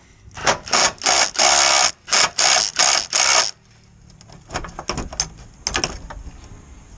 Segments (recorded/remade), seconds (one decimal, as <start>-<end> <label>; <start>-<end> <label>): 0.0-7.0 recorded